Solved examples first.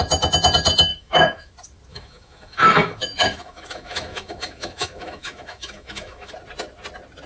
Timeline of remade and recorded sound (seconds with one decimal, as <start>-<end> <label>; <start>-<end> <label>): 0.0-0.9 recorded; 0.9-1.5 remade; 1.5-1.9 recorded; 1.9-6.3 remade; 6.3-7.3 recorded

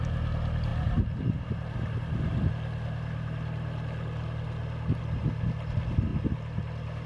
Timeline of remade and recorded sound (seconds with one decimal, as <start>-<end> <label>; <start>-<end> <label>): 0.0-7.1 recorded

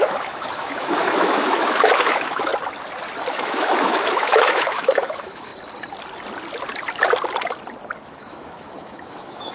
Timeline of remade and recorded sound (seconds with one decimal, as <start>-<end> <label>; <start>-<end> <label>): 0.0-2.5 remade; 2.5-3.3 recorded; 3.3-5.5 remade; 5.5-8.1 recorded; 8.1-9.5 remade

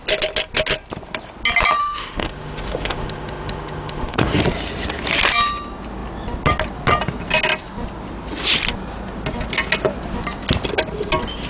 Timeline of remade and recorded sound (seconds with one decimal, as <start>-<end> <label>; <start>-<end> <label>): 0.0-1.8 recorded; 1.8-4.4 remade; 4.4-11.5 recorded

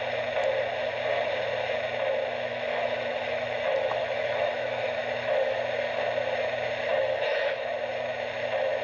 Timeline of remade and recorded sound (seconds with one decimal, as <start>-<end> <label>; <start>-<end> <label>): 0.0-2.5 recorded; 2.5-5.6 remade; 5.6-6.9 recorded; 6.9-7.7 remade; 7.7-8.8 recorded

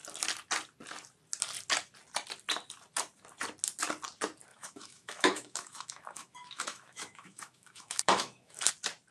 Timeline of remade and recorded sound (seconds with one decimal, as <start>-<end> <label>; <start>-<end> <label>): 0.0-4.5 recorded; 4.5-8.7 remade; 8.7-9.1 recorded

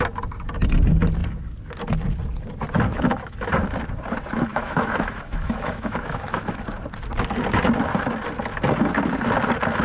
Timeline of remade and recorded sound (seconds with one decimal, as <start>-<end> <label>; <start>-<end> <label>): 0.0-2.9 recorded; 2.9-3.5 remade; 3.5-4.5 recorded; 4.5-6.6 remade; 6.6-9.8 recorded